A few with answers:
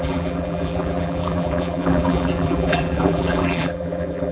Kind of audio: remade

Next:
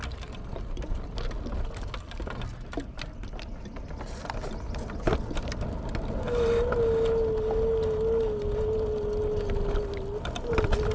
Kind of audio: recorded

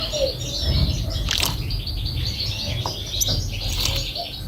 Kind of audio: recorded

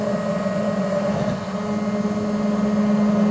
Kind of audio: recorded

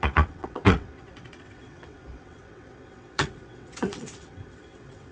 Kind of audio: remade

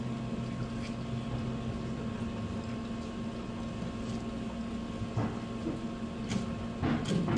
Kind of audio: recorded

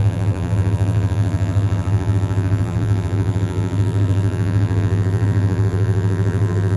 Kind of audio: remade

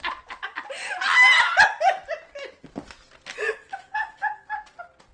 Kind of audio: recorded